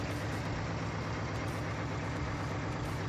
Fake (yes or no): no